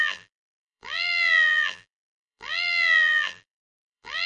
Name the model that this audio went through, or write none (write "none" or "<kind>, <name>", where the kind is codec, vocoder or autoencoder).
vocoder, BigVGAN v2